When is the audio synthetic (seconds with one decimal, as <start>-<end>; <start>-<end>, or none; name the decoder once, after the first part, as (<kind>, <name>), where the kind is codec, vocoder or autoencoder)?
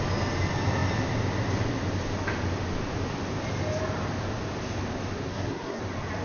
5.3-5.8 (codec, SNAC)